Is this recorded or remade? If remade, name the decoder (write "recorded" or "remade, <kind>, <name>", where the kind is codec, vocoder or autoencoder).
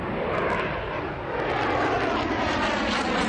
recorded